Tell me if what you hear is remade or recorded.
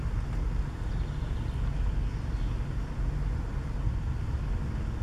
recorded